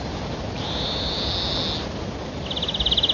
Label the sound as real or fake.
real